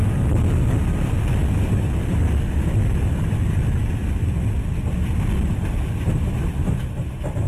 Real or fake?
real